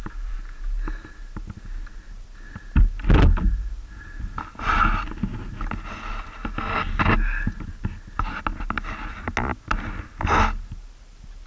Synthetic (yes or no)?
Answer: no